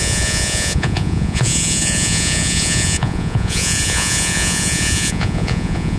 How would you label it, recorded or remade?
remade